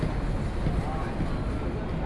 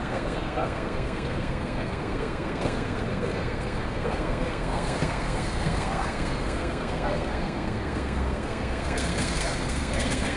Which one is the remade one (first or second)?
second